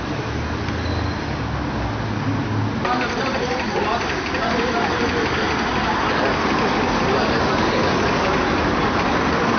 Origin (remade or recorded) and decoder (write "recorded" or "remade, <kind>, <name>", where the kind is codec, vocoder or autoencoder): recorded